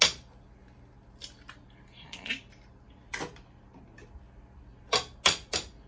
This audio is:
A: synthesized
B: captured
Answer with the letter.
B